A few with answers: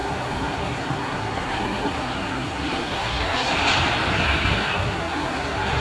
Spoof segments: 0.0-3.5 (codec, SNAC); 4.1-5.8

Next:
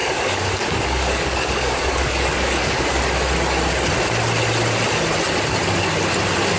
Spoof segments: 0.0-3.0 (codec, DAC)

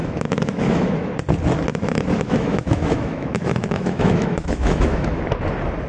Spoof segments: 0.0-1.1 (autoencoder, DAC-VAE); 1.7-5.2

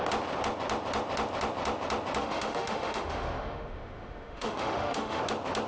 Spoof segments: 2.2-5.2 (autoencoder, DAC-VAE)

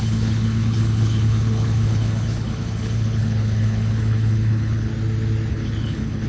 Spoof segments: 0.0-4.9 (codec, HILCodec); 5.5-6.3

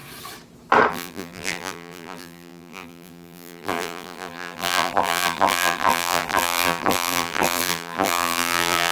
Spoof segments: 0.9-8.9 (vocoder, BigVGAN v2)

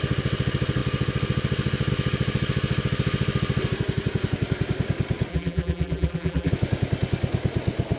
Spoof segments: 5.3-6.5 (vocoder, BigVGAN v2)

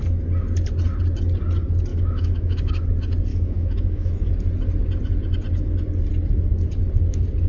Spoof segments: 1.9-2.7 (autoencoder, DAC-VAE); 3.3-4.3